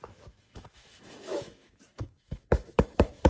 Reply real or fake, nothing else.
fake